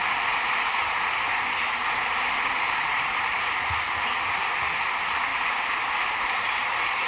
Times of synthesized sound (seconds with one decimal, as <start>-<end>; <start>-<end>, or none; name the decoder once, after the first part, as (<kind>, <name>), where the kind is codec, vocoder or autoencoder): 0.0-1.0 (vocoder, BigVGAN v2); 1.8-3.5; 5.3-7.1

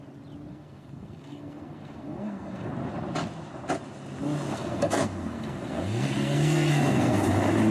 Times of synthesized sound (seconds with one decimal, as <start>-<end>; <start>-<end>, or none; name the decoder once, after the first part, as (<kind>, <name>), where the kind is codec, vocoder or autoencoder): 0.5-2.7 (codec, SNAC); 4.5-7.3

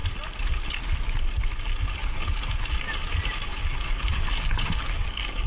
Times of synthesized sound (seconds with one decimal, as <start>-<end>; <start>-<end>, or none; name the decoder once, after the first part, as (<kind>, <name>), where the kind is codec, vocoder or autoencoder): 2.0-2.6 (codec, DAC); 3.5-5.5

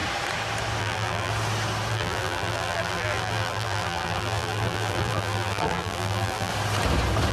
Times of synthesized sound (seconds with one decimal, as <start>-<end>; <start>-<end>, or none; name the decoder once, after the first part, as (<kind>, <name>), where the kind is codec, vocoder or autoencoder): 0.8-1.3 (vocoder, BigVGAN v2); 1.9-6.5

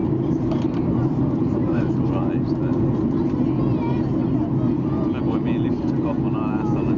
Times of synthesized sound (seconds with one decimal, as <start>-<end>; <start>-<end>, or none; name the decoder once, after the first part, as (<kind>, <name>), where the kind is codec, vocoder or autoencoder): 0.0-0.6 (vocoder, BigVGAN v2); 1.0-1.9

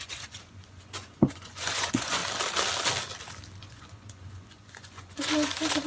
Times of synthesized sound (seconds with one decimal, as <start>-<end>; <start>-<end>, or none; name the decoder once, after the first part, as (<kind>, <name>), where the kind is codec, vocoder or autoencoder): 0.0-2.2 (vocoder, Vocos); 3.6-5.9

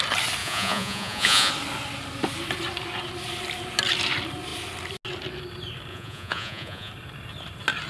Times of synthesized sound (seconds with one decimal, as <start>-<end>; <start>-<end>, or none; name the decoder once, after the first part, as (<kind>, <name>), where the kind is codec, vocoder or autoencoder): 0.4-1.5 (vocoder, Vocos); 5.9-6.9

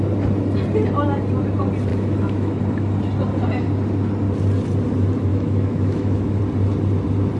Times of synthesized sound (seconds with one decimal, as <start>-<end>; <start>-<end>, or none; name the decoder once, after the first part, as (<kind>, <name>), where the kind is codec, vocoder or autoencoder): 1.9-2.6 (autoencoder, DAC-VAE); 5.3-6.4